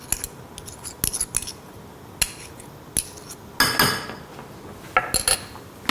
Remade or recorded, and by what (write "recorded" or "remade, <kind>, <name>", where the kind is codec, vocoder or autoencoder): recorded